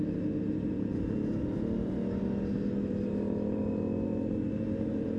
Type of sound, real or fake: real